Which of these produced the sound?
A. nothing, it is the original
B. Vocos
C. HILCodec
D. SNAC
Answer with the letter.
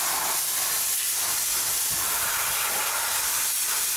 A